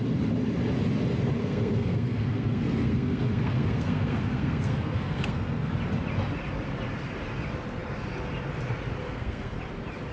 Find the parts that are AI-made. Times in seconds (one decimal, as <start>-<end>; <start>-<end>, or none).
1.4-5.7; 9.0-9.6